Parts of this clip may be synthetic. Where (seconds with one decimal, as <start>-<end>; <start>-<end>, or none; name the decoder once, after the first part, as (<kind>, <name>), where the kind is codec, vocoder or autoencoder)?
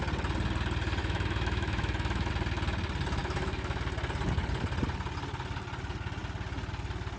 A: 1.0-2.3 (autoencoder, DAC-VAE); 3.2-3.8